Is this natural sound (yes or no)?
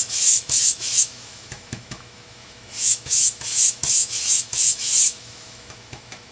no